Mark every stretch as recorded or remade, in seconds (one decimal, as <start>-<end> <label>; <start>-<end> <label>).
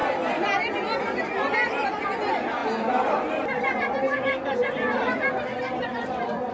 0.0-6.5 recorded